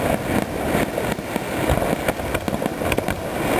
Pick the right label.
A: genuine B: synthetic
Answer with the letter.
A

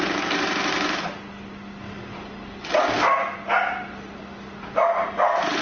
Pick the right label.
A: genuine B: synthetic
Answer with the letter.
A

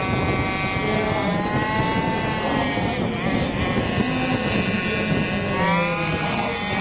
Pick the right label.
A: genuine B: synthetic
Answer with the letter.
A